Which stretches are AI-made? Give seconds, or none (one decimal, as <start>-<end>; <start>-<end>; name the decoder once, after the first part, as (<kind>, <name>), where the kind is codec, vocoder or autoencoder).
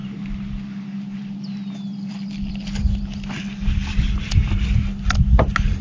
none